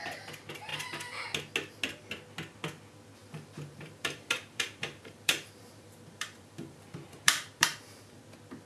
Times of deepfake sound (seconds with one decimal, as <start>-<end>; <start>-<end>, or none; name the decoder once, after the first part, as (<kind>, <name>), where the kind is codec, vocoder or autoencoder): 3.2-8.2 (vocoder, BigVGAN v2)